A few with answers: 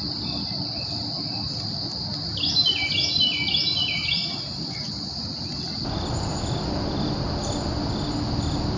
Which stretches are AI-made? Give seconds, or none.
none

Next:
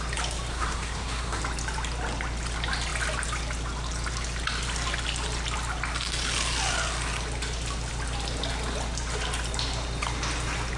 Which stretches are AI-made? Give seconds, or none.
0.5-1.4 (codec, SNAC)

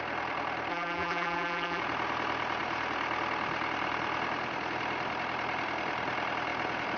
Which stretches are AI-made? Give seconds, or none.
0.7-1.8 (vocoder, BigVGAN v2)